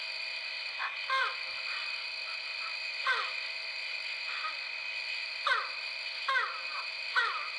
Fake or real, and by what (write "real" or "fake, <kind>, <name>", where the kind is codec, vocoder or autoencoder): real